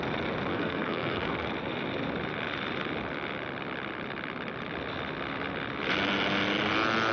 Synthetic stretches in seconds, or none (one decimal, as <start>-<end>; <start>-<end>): 0.5-1.3